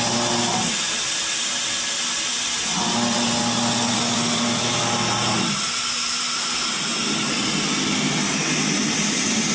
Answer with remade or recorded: recorded